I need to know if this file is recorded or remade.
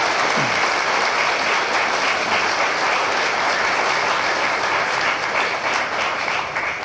recorded